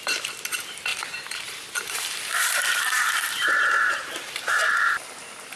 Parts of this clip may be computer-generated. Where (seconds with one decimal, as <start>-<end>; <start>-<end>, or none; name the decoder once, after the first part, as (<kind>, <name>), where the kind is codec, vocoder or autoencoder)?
0.9-4.3 (vocoder, BigVGAN v2)